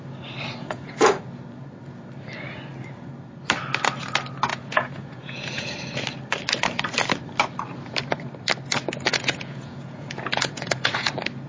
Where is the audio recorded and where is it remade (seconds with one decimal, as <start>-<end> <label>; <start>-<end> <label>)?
0.0-0.6 recorded; 0.6-1.2 remade; 1.2-4.5 recorded; 4.5-5.7 remade; 5.7-9.1 recorded; 9.1-11.1 remade; 11.1-11.5 recorded